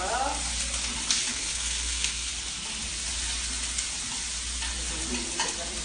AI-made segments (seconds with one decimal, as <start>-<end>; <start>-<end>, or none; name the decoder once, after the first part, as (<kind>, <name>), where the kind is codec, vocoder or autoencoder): 1.3-2.3 (codec, SNAC)